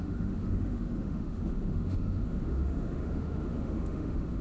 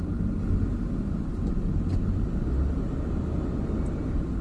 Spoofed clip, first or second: first